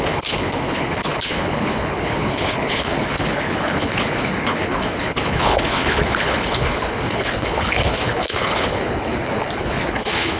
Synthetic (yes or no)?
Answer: yes